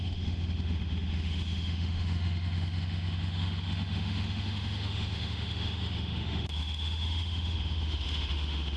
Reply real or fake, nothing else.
fake